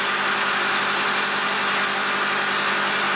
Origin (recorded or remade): recorded